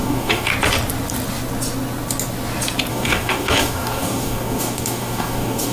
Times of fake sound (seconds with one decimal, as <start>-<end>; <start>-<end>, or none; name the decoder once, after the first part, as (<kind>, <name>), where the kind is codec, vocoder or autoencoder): 0.0-0.5 (codec, DAC); 2.9-5.7